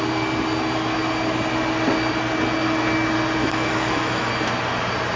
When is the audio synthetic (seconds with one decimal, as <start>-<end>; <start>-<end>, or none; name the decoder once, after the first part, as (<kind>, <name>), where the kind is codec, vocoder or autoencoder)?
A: 3.4-4.3 (autoencoder, DAC-VAE)